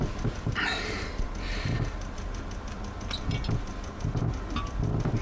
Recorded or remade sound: recorded